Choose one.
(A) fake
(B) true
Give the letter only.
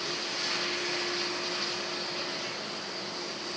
B